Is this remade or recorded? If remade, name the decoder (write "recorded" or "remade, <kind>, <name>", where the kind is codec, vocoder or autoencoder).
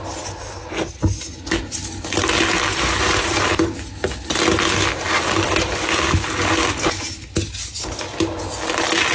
recorded